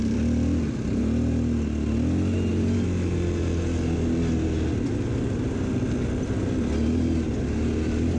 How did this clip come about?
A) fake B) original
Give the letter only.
B